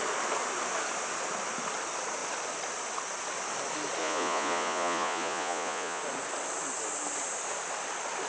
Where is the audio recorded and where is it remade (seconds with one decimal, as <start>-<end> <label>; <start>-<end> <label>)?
0.0-4.0 recorded; 4.0-6.0 remade; 6.0-8.3 recorded